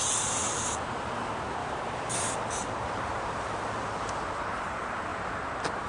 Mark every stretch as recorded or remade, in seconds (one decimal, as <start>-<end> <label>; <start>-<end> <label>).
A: 0.0-1.1 remade; 1.1-1.6 recorded; 1.6-4.2 remade; 4.2-5.1 recorded; 5.1-5.9 remade